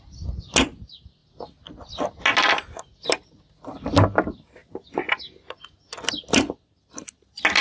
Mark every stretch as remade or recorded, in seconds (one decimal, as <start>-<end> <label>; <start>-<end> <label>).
0.0-7.6 recorded

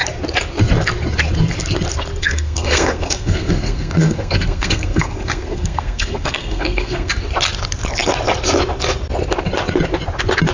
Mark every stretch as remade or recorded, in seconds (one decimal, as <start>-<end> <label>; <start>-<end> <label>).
0.0-2.2 recorded; 2.2-7.1 remade; 7.1-10.5 recorded

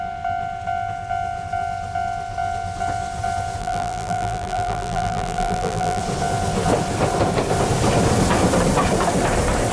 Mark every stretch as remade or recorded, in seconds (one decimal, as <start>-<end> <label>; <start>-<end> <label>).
0.0-3.6 recorded; 3.6-6.0 remade; 6.0-9.7 recorded

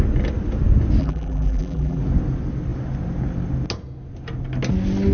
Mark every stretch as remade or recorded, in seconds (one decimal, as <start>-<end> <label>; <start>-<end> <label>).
0.0-1.0 recorded; 1.0-2.0 remade; 2.0-5.1 recorded